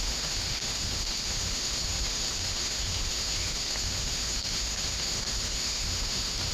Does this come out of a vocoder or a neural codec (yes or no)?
yes